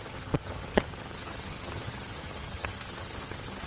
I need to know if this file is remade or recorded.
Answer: remade